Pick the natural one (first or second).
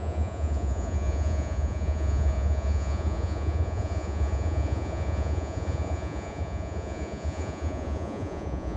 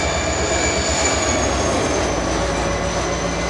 second